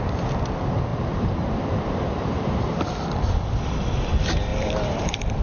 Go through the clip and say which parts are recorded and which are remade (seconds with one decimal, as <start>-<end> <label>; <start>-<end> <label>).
0.0-0.9 recorded; 0.9-2.8 remade; 2.8-4.5 recorded; 4.5-5.4 remade